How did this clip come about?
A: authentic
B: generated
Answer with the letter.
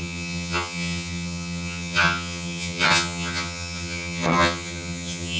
B